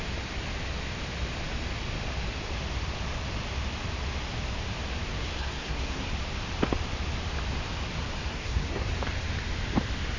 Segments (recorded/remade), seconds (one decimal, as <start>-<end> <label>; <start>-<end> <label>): 0.0-5.1 recorded; 5.1-6.1 remade; 6.1-8.3 recorded; 8.3-8.9 remade; 8.9-10.2 recorded